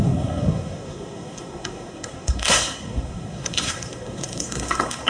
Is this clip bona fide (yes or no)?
no